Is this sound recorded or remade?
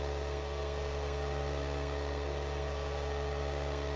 remade